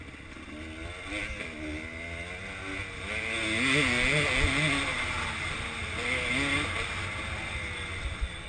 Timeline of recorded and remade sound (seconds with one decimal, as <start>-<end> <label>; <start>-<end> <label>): 0.0-8.5 recorded